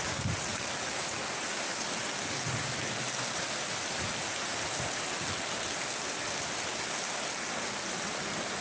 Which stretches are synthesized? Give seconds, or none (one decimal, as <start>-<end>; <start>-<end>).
none